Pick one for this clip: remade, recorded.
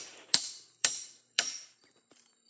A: remade